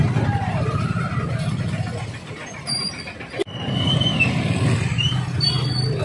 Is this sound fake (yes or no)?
no